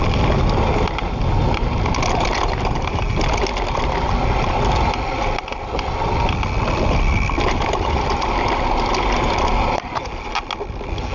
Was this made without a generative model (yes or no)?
yes